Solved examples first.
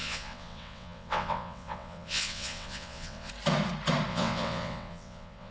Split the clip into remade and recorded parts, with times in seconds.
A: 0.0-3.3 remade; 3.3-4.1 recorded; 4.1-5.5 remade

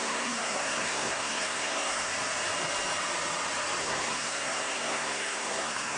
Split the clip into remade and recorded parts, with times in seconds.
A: 0.0-2.1 remade; 2.1-3.8 recorded; 3.8-6.0 remade